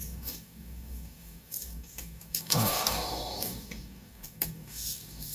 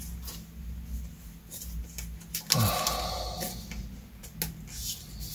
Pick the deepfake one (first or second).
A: first